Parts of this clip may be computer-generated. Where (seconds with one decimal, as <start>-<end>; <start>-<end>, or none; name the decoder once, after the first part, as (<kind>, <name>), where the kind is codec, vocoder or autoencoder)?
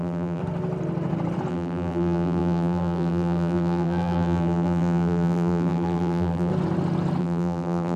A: 0.0-0.4 (vocoder, BigVGAN v2); 1.5-6.5; 7.2-8.0